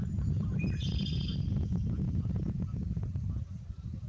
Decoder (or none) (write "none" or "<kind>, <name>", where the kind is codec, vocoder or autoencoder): none